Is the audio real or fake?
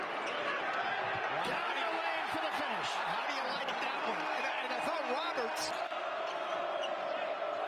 real